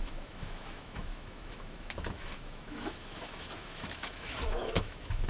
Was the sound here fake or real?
fake